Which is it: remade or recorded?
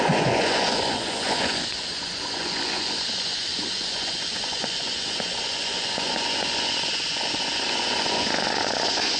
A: remade